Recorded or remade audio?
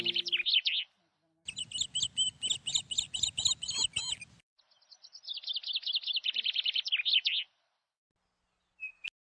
recorded